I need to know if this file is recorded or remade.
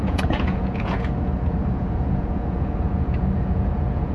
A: remade